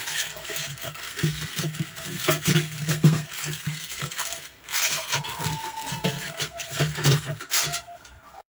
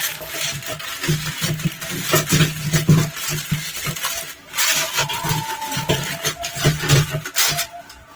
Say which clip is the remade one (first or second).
first